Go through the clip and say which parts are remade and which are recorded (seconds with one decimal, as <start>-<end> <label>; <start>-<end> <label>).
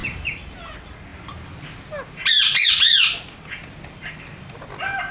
0.0-5.1 recorded